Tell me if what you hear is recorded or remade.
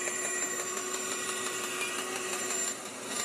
remade